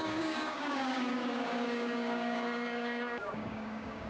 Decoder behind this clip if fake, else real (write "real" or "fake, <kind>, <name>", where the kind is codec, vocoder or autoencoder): fake, codec, DAC